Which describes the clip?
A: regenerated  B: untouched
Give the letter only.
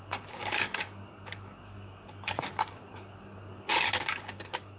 A